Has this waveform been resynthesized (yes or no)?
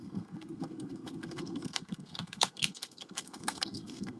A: yes